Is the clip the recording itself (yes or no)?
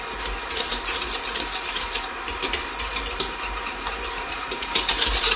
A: no